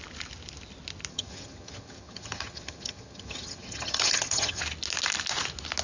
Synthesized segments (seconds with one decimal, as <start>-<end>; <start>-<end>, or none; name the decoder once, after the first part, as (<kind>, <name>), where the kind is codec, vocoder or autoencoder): 1.1-4.6 (vocoder, HiFi-GAN)